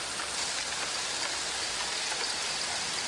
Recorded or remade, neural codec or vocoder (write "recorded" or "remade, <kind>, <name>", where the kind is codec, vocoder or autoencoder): recorded